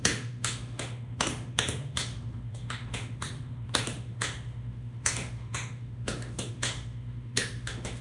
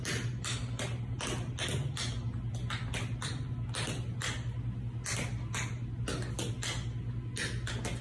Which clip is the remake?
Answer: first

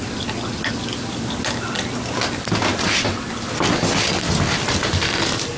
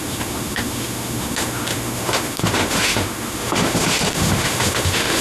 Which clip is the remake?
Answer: second